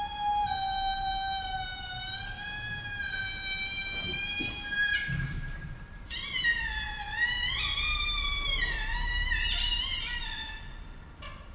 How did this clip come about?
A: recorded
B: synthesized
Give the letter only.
B